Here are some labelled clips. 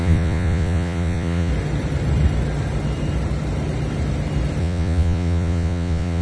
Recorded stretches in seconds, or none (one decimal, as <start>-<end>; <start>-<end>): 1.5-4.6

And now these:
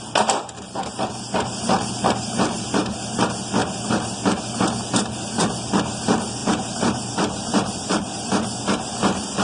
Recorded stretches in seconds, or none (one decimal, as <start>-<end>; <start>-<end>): 0.0-6.4; 8.0-9.4

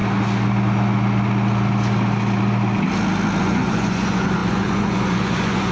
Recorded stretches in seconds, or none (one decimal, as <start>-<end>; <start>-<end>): 0.0-3.4